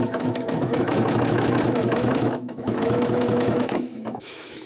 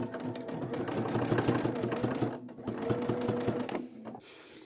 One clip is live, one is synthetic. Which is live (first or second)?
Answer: second